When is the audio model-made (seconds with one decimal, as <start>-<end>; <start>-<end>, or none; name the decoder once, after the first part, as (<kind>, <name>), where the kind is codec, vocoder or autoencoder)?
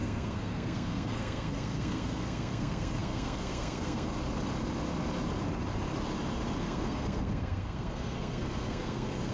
0.0-4.1 (codec, SNAC); 6.6-9.3